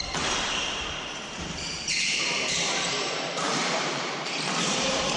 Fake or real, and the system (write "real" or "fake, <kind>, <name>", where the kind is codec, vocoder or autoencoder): fake, vocoder, BigVGAN v2